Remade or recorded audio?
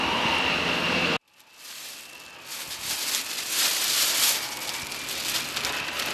recorded